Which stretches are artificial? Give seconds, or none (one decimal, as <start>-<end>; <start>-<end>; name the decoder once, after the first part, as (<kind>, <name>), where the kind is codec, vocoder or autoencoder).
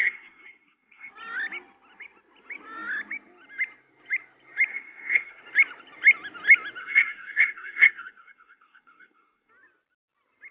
0.0-1.1 (codec, SNAC); 4.7-5.4; 6.8-9.5